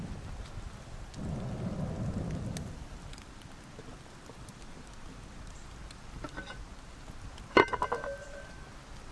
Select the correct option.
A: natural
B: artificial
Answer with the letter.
A